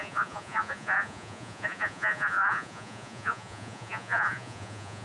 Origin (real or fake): fake